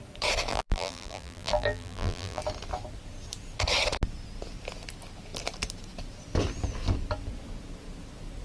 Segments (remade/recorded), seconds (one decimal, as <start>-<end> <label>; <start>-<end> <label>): 0.0-0.5 recorded; 0.5-2.4 remade; 2.4-8.4 recorded